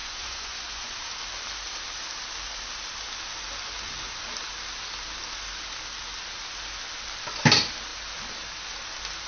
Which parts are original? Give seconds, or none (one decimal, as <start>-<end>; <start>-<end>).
0.9-9.3